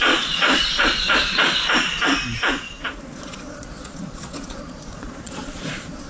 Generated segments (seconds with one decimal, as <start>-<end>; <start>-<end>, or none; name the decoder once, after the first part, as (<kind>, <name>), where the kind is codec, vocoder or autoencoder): 0.0-1.6 (vocoder, Vocos); 3.0-6.1